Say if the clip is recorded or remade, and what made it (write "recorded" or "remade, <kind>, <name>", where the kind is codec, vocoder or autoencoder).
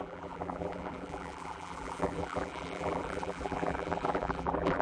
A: remade, vocoder, BigVGAN v2